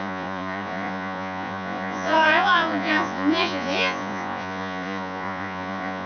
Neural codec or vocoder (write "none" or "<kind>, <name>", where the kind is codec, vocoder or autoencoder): vocoder, Vocos